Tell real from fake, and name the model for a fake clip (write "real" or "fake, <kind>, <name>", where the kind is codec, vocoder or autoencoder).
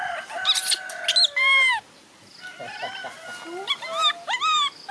real